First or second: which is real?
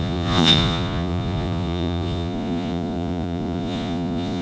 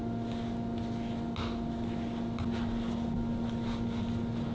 second